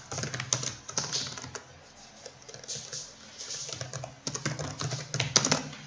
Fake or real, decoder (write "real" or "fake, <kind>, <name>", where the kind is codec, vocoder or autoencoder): real